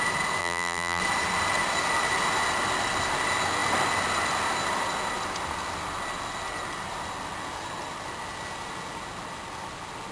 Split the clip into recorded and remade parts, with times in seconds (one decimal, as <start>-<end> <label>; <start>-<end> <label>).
0.0-0.4 recorded; 0.4-1.0 remade; 1.0-10.1 recorded